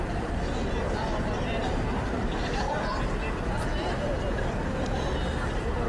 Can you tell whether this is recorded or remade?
recorded